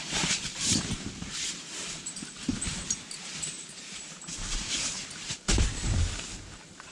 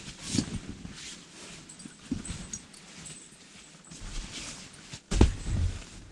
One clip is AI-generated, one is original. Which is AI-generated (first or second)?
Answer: first